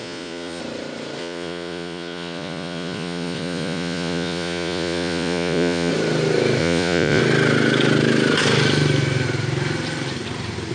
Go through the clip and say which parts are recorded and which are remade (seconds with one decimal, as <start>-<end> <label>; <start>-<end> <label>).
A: 0.0-0.6 remade; 0.6-1.2 recorded; 1.2-5.9 remade; 5.9-6.6 recorded; 6.6-7.2 remade; 7.2-10.7 recorded